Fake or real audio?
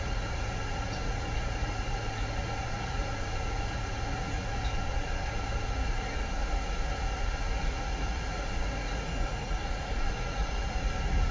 fake